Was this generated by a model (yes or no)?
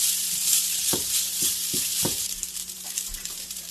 yes